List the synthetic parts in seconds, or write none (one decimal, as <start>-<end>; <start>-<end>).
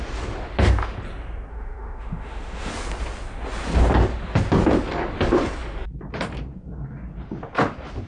1.5-2.7